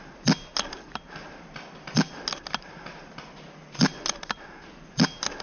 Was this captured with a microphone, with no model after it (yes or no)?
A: yes